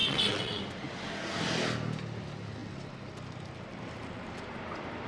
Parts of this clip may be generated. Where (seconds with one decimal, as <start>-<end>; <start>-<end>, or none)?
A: 0.0-0.6